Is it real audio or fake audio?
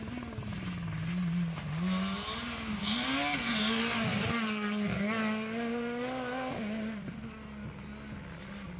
real